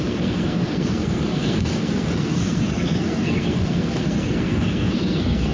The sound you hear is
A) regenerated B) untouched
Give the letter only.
A